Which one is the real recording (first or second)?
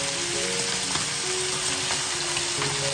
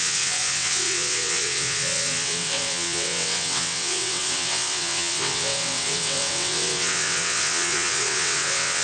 first